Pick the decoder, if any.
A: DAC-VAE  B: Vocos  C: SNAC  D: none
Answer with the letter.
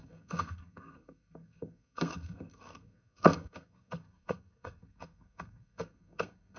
C